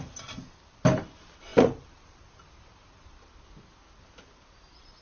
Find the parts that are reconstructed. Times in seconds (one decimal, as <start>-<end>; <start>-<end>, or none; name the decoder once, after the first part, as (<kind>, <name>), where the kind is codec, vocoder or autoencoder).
1.5-3.3 (vocoder, BigVGAN v2)